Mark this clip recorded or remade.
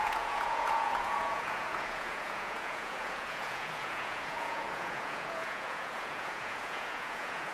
remade